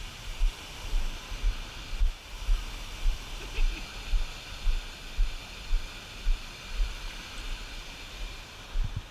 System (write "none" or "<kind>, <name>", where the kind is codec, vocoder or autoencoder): none